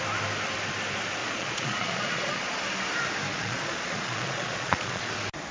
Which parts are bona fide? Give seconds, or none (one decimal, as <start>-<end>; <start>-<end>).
0.0-1.2; 2.6-3.3; 5.1-5.5